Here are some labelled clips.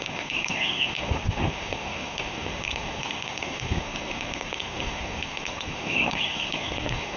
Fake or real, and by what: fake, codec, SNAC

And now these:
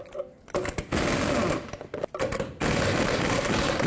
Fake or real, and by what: real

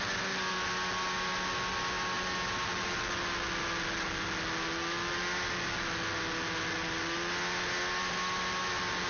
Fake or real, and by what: real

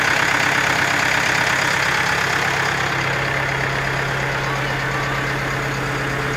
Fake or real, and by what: real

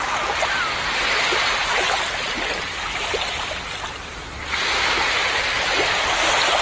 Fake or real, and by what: real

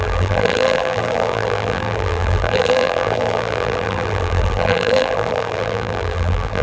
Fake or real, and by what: fake, vocoder, BigVGAN v2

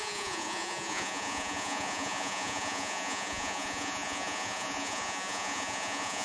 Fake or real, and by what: fake, vocoder, Vocos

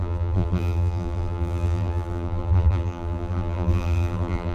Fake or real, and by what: fake, vocoder, BigVGAN v2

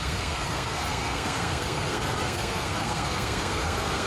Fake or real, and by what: fake, codec, SNAC